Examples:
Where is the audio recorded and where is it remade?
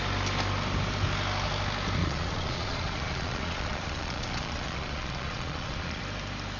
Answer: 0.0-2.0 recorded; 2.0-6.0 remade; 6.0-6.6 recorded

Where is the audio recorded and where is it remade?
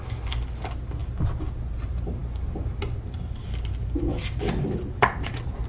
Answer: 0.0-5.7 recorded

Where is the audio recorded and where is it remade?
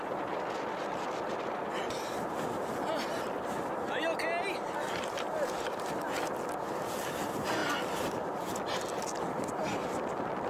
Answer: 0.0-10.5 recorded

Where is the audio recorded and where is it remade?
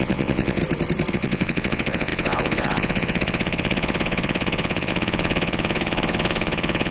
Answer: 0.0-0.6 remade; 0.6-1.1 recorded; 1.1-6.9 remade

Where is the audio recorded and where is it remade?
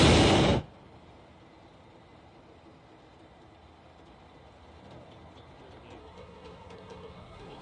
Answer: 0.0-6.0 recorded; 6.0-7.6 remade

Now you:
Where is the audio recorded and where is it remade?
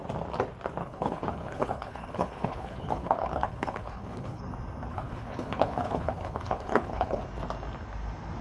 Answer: 0.0-0.8 recorded; 0.8-4.4 remade; 4.4-4.9 recorded; 4.9-7.2 remade; 7.2-8.4 recorded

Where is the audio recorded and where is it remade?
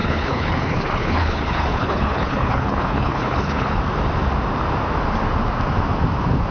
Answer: 0.0-3.8 remade; 3.8-6.5 recorded